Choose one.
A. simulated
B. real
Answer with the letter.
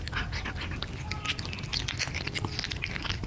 B